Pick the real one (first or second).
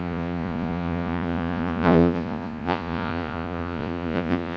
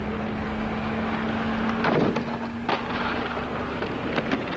second